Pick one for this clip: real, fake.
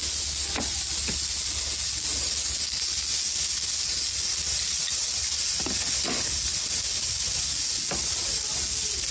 real